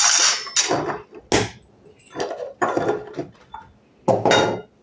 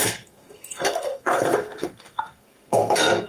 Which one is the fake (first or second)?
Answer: second